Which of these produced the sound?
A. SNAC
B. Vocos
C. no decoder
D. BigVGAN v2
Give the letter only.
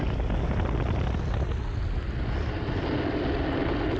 C